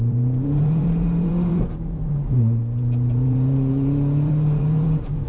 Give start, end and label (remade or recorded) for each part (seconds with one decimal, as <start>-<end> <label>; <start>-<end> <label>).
0.0-5.3 remade

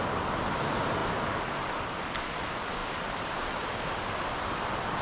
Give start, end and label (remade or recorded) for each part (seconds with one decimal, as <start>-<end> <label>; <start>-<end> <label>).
0.0-5.0 recorded

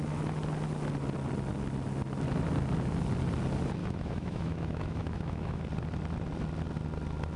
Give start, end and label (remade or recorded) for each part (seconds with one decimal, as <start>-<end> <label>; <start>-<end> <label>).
0.0-3.8 recorded; 3.8-5.6 remade; 5.6-7.4 recorded

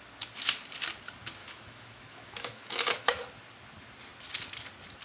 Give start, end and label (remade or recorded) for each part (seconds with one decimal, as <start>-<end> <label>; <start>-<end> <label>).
0.0-1.4 recorded; 1.4-3.2 remade; 3.2-5.0 recorded

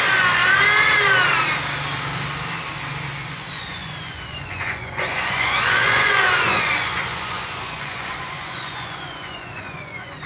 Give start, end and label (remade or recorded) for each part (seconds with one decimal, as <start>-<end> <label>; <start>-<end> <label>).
0.0-0.4 remade; 0.4-3.3 recorded; 3.3-10.3 remade

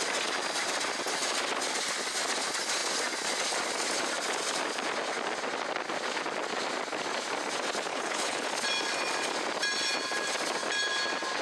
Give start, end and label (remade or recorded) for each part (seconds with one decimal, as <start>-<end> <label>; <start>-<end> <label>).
0.0-7.9 recorded; 7.9-8.5 remade; 8.5-11.4 recorded